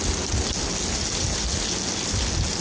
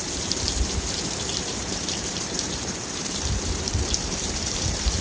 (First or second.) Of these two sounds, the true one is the first